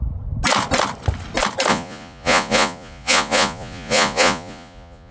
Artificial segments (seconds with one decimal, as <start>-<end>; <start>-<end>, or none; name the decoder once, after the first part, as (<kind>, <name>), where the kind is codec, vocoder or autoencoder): 1.7-5.1 (vocoder, Vocos)